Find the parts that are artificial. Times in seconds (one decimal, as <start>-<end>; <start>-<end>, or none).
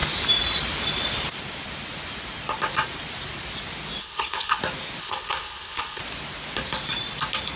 4.0-4.6; 5.0-6.0